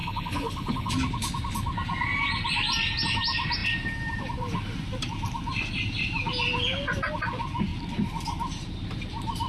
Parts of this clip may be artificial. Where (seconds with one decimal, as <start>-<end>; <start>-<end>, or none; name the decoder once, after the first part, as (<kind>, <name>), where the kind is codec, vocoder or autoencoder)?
0.0-0.9 (codec, HILCodec)